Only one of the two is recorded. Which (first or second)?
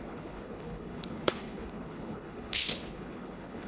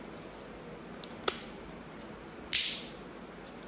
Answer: second